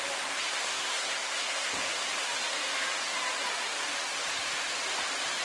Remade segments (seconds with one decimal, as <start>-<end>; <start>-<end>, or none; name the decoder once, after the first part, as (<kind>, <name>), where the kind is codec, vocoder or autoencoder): 0.4-1.9 (codec, SNAC)